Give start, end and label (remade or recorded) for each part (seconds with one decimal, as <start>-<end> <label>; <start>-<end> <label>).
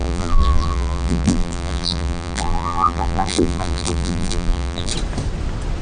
0.0-4.9 remade; 4.9-5.8 recorded